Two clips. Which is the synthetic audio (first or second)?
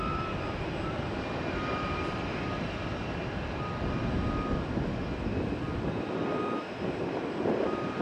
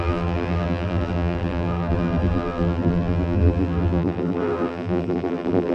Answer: second